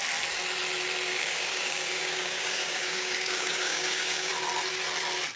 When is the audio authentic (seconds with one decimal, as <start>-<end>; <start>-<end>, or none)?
0.0-1.1; 4.3-5.4